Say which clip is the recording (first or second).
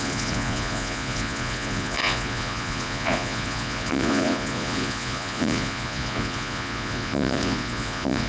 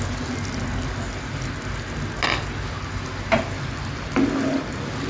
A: second